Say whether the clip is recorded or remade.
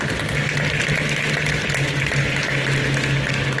recorded